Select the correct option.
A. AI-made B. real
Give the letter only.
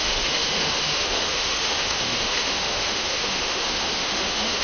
A